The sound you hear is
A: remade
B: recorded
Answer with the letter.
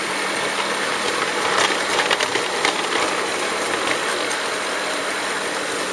B